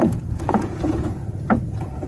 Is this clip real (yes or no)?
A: no